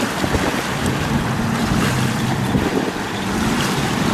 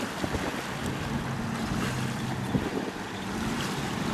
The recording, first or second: second